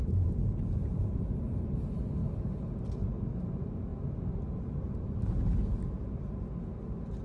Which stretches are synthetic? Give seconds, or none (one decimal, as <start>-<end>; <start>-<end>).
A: 0.0-1.3; 2.2-2.8